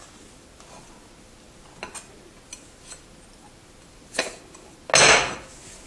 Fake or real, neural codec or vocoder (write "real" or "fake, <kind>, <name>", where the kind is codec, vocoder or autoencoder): real